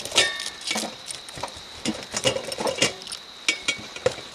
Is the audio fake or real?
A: real